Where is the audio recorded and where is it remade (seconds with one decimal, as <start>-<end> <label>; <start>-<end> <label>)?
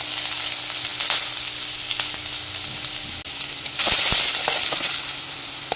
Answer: 0.0-5.8 recorded